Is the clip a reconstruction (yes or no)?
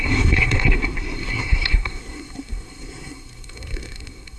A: yes